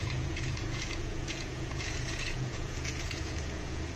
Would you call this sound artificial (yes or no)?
yes